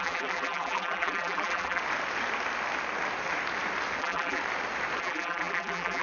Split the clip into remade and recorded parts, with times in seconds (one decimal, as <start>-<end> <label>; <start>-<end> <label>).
0.0-1.8 remade; 1.8-4.0 recorded; 4.0-4.4 remade; 4.4-5.0 recorded; 5.0-6.0 remade